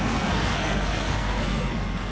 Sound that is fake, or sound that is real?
fake